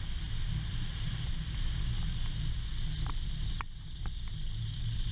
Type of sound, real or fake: fake